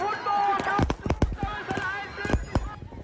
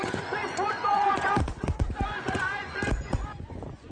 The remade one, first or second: second